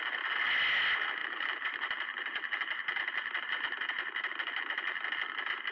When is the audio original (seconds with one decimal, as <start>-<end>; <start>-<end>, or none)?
0.0-1.2; 4.6-5.7

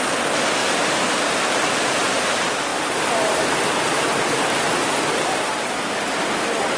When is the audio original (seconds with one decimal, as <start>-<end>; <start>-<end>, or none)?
0.0-0.6; 1.7-2.7; 5.5-6.8

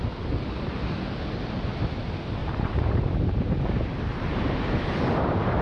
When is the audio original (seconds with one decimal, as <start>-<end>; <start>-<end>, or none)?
0.0-2.4; 4.6-5.6

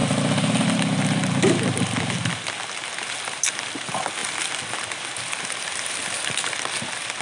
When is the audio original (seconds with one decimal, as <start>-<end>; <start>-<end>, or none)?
0.0-7.2

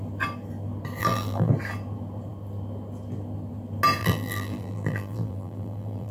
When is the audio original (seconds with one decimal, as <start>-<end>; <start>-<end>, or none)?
0.0-1.0; 1.5-4.0

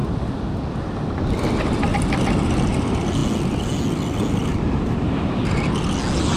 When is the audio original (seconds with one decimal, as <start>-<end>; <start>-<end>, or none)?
0.0-4.5; 5.4-6.4

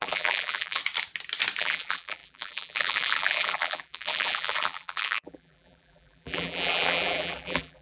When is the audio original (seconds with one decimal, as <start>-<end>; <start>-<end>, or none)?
0.8-1.6

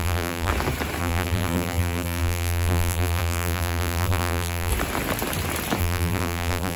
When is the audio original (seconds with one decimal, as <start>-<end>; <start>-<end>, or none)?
0.5-1.0; 4.7-5.8